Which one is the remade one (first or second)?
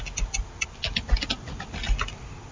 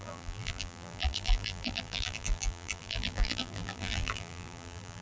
second